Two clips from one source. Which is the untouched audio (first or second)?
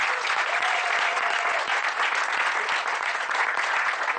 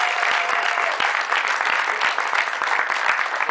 second